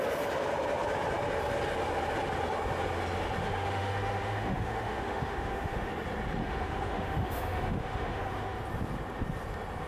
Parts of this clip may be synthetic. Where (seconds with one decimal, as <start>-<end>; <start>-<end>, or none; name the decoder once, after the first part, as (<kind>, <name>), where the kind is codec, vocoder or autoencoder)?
3.4-5.9 (autoencoder, DAC-VAE); 6.4-8.6